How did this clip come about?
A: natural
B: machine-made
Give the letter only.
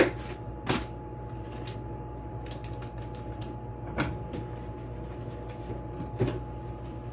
A